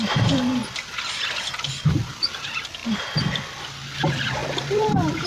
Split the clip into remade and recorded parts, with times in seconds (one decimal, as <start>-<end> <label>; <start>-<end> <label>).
0.0-0.6 remade; 0.6-1.5 recorded; 1.5-2.8 remade; 2.8-3.6 recorded; 3.6-5.3 remade